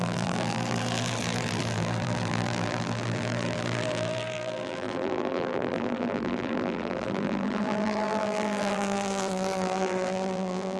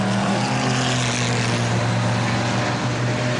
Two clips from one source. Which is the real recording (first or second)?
second